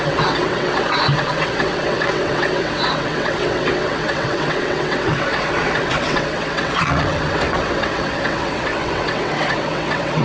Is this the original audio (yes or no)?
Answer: no